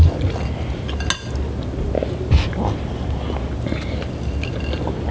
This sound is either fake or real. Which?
real